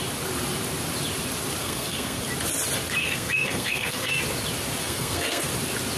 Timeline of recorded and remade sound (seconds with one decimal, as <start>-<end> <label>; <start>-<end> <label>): 0.0-1.6 recorded; 1.6-2.2 remade; 2.2-3.0 recorded; 3.0-4.2 remade; 4.2-4.8 recorded; 4.8-5.5 remade; 5.5-6.0 recorded